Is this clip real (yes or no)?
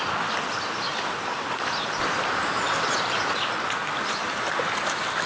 yes